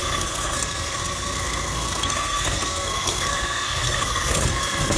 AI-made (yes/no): yes